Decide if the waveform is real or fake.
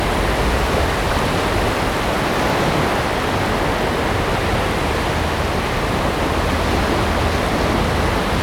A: real